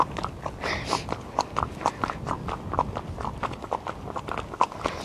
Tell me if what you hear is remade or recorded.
recorded